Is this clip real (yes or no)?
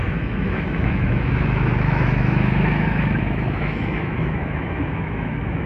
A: no